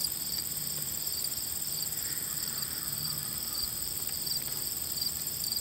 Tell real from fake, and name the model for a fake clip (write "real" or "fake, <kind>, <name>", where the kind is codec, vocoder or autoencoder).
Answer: fake, vocoder, BigVGAN v2